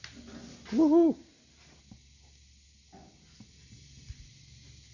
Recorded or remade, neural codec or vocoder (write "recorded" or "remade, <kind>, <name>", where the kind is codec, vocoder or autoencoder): recorded